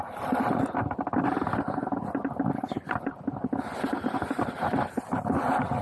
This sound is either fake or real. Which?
real